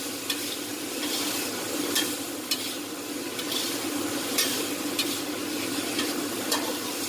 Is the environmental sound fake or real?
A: real